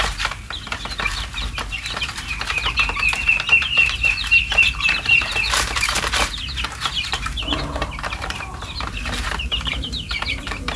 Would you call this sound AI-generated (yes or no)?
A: yes